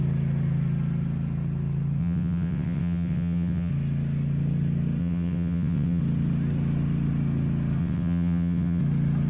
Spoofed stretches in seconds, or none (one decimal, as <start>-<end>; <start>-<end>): 2.0-3.7; 5.0-6.0; 7.8-8.8